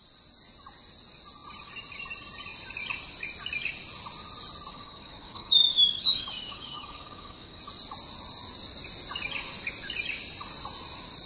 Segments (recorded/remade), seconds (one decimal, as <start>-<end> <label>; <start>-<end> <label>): 0.0-4.7 recorded; 4.7-7.6 remade; 7.6-11.3 recorded